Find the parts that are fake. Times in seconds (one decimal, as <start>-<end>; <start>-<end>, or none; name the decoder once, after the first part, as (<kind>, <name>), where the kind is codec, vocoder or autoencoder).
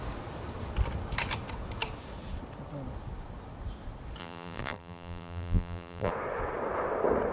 4.2-6.1 (vocoder, BigVGAN v2)